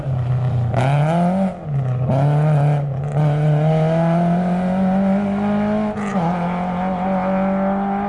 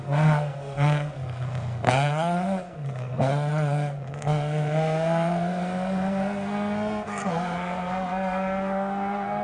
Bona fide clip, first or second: first